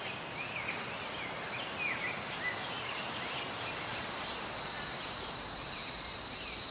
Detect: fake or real real